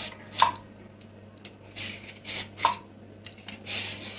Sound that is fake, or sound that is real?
real